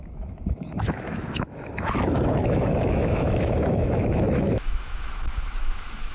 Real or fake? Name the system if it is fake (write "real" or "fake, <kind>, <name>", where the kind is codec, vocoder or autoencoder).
fake, autoencoder, DAC-VAE